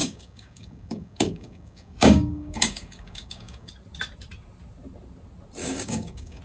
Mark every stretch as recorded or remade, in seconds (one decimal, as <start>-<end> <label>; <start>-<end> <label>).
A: 0.0-3.7 remade; 3.7-5.6 recorded; 5.6-6.4 remade

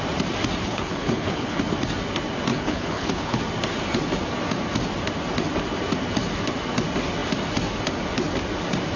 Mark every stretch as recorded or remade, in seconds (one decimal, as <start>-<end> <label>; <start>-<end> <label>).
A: 0.0-0.6 recorded; 0.6-1.6 remade; 1.6-2.5 recorded; 2.5-3.4 remade; 3.4-9.0 recorded

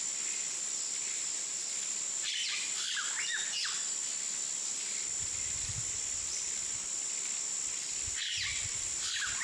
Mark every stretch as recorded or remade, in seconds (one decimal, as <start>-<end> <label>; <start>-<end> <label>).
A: 0.0-9.4 recorded

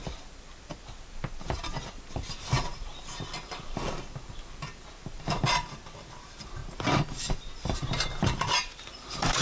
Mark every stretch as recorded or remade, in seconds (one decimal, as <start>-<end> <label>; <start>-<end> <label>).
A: 0.0-6.6 remade; 6.6-7.3 recorded; 7.3-9.4 remade